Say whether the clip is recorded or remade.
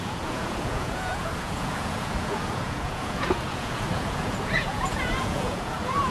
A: remade